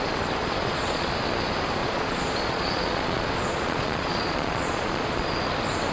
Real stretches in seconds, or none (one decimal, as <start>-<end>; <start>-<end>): 0.0-0.4; 1.2-1.8; 5.3-5.9